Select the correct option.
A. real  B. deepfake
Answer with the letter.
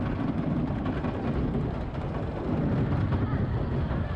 A